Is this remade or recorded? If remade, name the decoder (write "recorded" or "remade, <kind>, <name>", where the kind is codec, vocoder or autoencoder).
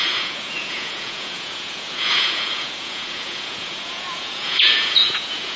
remade, vocoder, Vocos